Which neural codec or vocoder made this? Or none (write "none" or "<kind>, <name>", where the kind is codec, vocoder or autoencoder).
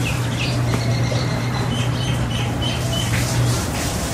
vocoder, BigVGAN v2